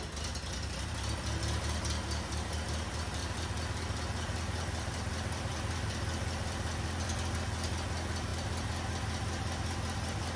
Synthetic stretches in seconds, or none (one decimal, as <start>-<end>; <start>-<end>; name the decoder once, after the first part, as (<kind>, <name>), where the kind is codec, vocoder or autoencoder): 3.2-7.2 (vocoder, BigVGAN v2)